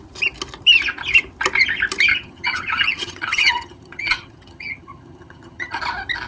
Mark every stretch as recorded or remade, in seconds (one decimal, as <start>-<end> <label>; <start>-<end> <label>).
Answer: 0.0-2.1 recorded; 2.1-5.8 remade; 5.8-6.3 recorded